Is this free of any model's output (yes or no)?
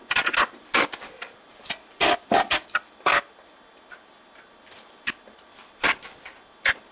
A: yes